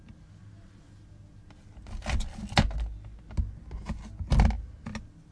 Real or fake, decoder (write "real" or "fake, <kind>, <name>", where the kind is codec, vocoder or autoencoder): real